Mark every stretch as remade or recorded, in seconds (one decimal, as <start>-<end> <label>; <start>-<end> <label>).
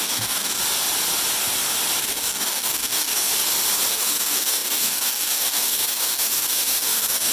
0.0-0.6 remade; 0.6-2.0 recorded; 2.0-3.3 remade; 3.3-3.9 recorded; 3.9-7.3 remade